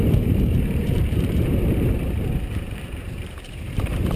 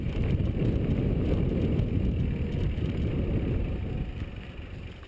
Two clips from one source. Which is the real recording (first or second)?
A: second